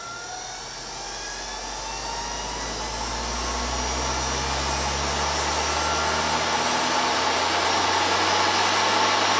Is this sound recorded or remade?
recorded